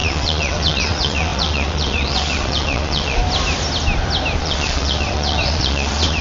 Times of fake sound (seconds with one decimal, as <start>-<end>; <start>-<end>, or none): 0.0-3.2; 4.4-6.2